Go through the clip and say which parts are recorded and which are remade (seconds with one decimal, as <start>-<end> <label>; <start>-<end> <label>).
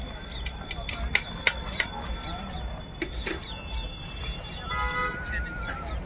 0.0-6.1 recorded